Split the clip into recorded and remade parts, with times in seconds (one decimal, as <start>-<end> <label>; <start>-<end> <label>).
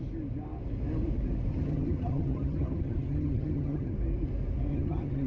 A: 0.0-1.5 recorded; 1.5-3.9 remade; 3.9-4.7 recorded; 4.7-5.3 remade